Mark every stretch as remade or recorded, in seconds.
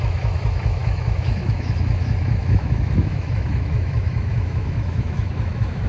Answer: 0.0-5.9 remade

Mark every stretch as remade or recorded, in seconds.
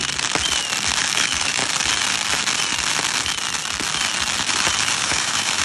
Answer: 0.0-1.0 recorded; 1.0-1.6 remade; 1.6-5.0 recorded; 5.0-5.6 remade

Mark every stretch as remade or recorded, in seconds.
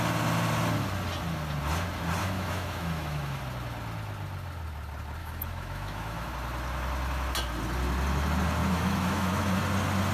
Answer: 0.0-2.2 recorded; 2.2-3.4 remade; 3.4-5.2 recorded; 5.2-6.3 remade; 6.3-8.6 recorded; 8.6-9.6 remade; 9.6-10.1 recorded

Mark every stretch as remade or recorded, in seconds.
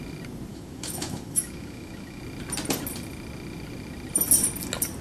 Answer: 0.0-0.5 recorded; 0.5-2.2 remade; 2.2-5.0 recorded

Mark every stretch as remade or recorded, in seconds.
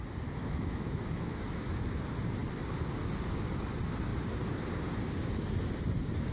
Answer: 0.0-0.4 recorded; 0.4-2.0 remade; 2.0-6.3 recorded